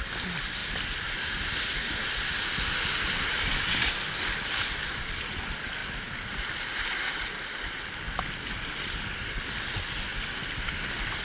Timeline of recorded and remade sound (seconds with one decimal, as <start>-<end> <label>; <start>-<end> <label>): 0.0-11.2 recorded